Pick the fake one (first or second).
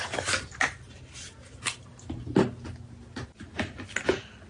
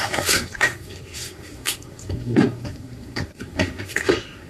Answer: second